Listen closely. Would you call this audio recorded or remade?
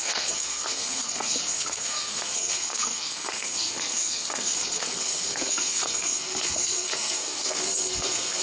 remade